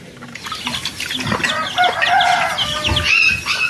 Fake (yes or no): no